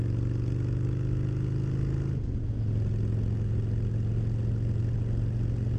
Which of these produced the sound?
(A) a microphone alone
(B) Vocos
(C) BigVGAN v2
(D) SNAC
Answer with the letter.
A